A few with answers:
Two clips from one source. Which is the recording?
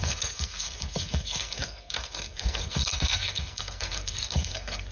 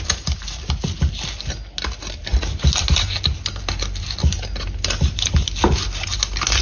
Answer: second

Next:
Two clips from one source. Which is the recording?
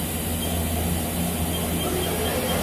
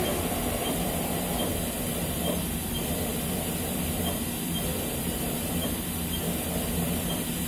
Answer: first